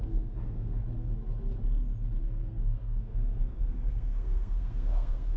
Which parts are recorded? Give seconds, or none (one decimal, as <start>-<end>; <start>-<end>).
0.8-2.2